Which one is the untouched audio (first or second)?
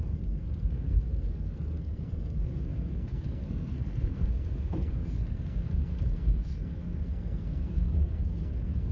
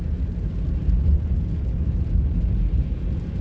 second